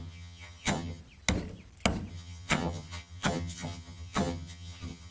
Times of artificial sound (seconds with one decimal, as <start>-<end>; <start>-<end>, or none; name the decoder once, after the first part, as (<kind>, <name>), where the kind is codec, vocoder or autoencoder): 0.0-1.0 (vocoder, HiFi-GAN); 2.1-5.1